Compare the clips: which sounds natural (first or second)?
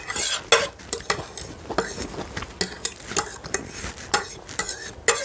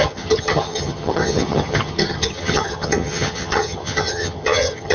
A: first